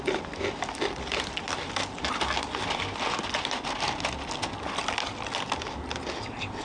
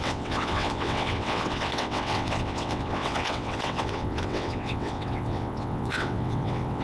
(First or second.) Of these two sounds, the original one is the first